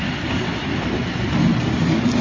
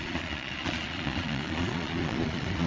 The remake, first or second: second